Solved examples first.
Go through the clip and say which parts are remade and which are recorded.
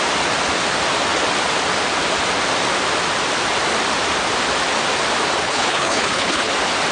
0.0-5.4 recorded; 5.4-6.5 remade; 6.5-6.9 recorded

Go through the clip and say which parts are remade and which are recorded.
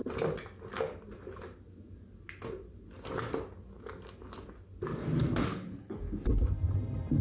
0.0-5.5 recorded; 5.5-6.0 remade; 6.0-7.2 recorded